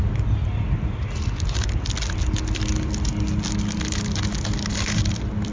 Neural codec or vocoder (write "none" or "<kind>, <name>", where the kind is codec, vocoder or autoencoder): none